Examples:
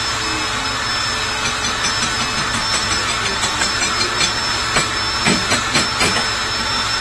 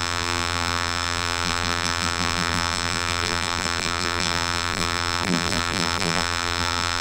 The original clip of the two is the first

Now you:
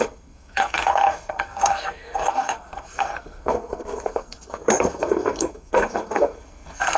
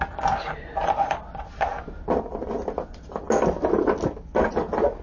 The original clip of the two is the second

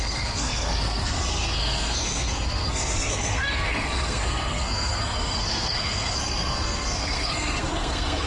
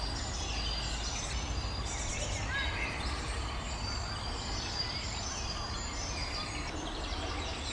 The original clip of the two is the second